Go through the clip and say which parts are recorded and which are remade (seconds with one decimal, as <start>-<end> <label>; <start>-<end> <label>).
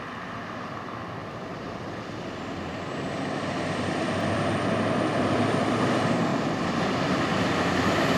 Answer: 0.0-8.2 remade